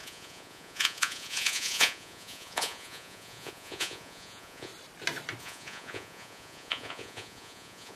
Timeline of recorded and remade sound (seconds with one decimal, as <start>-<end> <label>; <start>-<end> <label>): 0.0-4.7 remade; 4.7-5.4 recorded; 5.4-8.0 remade